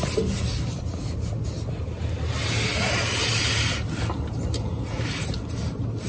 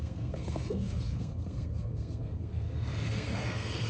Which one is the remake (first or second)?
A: second